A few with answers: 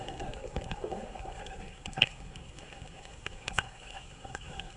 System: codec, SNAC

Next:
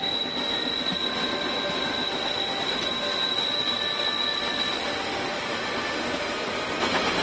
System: none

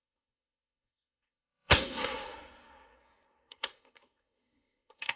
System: codec, SNAC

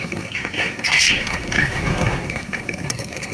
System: codec, SNAC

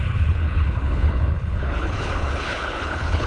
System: codec, HILCodec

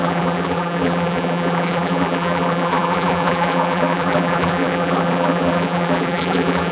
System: vocoder, BigVGAN v2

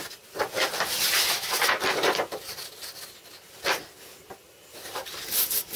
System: none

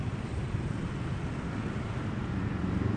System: vocoder, BigVGAN v2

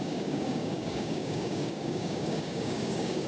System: codec, DAC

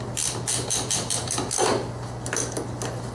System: none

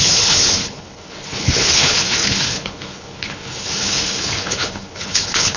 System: codec, HILCodec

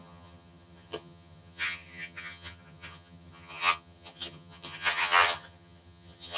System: vocoder, HiFi-GAN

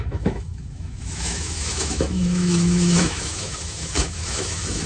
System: autoencoder, DAC-VAE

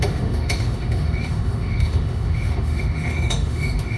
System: autoencoder, DAC-VAE